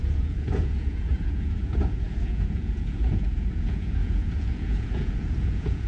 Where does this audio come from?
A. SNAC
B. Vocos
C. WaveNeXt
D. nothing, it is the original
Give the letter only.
B